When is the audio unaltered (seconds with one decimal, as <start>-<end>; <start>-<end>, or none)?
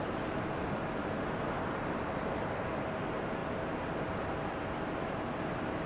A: 3.4-5.0